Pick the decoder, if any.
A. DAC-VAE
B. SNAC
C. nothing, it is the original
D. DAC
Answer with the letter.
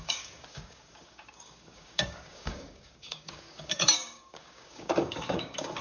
D